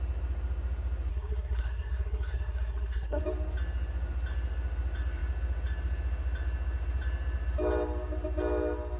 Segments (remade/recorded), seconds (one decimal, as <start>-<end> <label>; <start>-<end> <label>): 0.0-1.1 recorded; 1.1-3.2 remade; 3.2-9.0 recorded